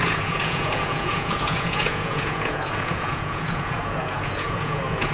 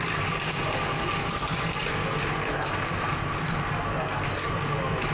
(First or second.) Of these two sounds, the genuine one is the second